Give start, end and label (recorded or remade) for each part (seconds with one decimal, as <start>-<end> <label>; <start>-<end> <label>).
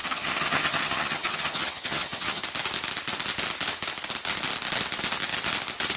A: 0.0-2.4 remade; 2.4-6.0 recorded